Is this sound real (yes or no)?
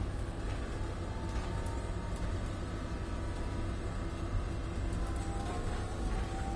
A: yes